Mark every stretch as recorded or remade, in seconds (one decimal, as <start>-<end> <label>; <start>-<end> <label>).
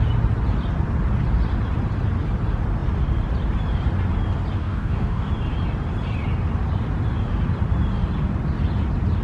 0.0-4.6 recorded; 4.6-5.3 remade; 5.3-9.2 recorded